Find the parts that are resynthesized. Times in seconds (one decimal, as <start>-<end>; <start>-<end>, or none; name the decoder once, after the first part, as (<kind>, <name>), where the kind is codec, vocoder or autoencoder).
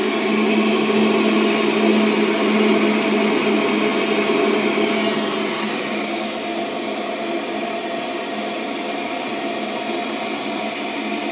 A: none